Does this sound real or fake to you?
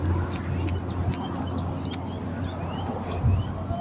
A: real